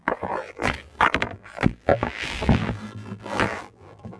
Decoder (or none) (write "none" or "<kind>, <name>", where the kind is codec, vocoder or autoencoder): vocoder, BigVGAN v2